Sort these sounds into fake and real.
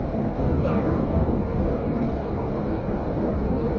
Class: fake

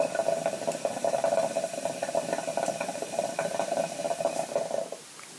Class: fake